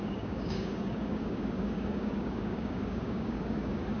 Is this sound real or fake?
fake